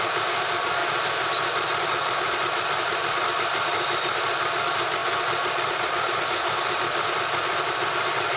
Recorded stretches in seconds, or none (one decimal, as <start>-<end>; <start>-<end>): 0.8-2.7